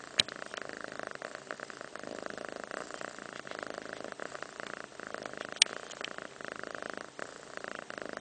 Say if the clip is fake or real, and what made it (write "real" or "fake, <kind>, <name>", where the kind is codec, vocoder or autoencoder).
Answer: real